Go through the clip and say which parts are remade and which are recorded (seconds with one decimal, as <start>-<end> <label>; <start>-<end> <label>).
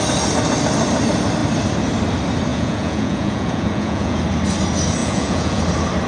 0.0-2.5 recorded; 2.5-4.2 remade; 4.2-5.0 recorded; 5.0-5.6 remade; 5.6-6.1 recorded